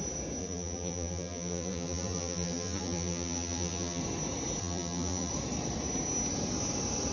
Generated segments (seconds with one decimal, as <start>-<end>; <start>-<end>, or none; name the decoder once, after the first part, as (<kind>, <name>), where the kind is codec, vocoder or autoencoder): 0.4-4.0 (vocoder, BigVGAN v2); 4.6-5.3